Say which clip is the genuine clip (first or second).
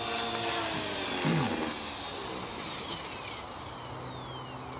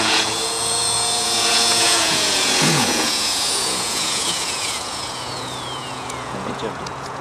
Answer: first